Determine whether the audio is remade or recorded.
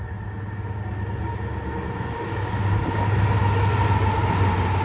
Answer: recorded